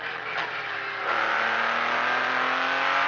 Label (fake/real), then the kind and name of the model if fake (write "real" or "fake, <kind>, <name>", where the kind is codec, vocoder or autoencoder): real